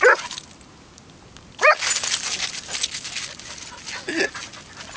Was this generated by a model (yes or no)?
no